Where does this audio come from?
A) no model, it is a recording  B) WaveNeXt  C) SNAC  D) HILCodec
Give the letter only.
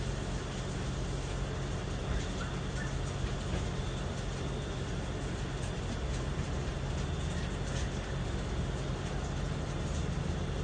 A